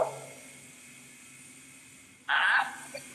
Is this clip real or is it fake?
real